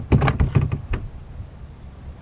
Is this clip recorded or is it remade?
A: recorded